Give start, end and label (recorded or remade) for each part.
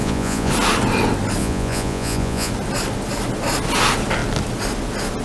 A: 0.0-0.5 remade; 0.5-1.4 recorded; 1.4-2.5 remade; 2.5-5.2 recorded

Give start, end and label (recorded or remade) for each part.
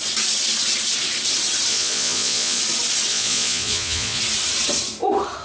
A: 0.0-1.7 recorded; 1.7-2.6 remade; 2.6-3.1 recorded; 3.1-4.2 remade; 4.2-5.4 recorded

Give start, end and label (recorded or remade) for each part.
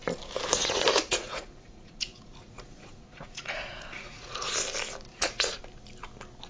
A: 0.0-0.6 recorded; 0.6-4.5 remade; 4.5-5.1 recorded; 5.1-5.6 remade; 5.6-6.5 recorded